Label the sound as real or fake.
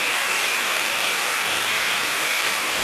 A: fake